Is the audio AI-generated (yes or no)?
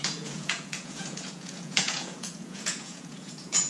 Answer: yes